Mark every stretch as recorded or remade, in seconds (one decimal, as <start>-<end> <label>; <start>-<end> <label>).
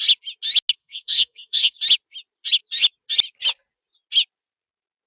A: 0.0-0.8 recorded; 0.8-1.8 remade; 1.8-5.1 recorded